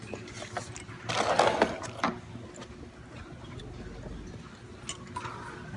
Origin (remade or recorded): recorded